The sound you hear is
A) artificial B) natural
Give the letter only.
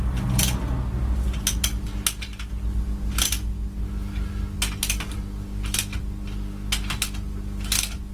B